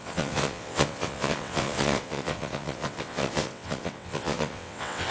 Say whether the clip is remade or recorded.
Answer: remade